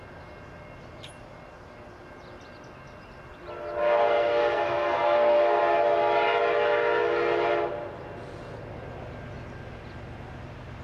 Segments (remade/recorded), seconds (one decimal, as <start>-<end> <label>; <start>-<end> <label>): 0.0-3.8 recorded; 3.8-5.6 remade; 5.6-10.8 recorded